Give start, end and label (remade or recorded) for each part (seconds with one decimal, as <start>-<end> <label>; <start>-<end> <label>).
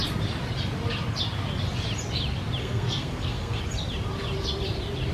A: 0.0-2.6 recorded; 2.6-3.6 remade; 3.6-5.1 recorded